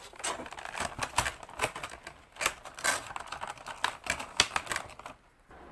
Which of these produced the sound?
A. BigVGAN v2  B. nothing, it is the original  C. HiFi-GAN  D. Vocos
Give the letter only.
B